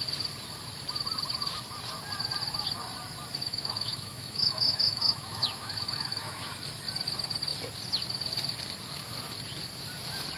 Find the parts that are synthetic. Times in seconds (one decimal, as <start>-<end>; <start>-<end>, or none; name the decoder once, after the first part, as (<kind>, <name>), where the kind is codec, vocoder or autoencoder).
3.5-6.5 (autoencoder, DAC-VAE)